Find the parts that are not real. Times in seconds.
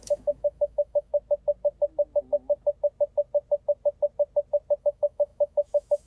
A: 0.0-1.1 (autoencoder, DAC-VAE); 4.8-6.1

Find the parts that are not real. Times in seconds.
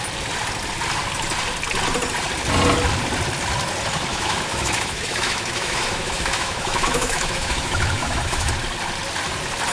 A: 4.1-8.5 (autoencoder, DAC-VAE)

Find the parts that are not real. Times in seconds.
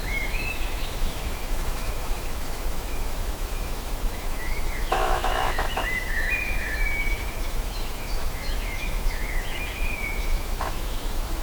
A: 0.0-11.4 (autoencoder, DAC-VAE)